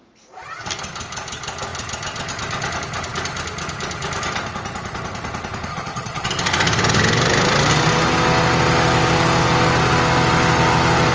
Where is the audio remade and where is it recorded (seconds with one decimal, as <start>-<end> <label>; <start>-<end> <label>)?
0.0-5.7 recorded; 5.7-6.3 remade; 6.3-11.1 recorded